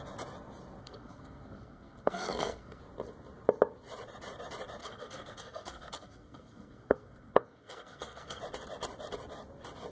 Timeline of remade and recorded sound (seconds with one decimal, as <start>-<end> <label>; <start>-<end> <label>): 0.0-0.8 recorded; 0.8-2.8 remade; 2.8-4.8 recorded; 4.8-8.4 remade; 8.4-9.9 recorded